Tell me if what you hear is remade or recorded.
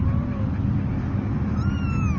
recorded